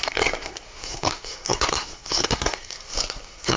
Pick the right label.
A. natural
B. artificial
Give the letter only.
B